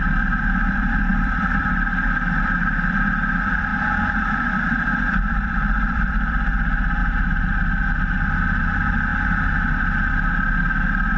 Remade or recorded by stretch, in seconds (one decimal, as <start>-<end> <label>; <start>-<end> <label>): 0.0-3.7 remade; 3.7-5.1 recorded; 5.1-7.0 remade; 7.0-8.6 recorded; 8.6-9.1 remade; 9.1-10.1 recorded; 10.1-11.2 remade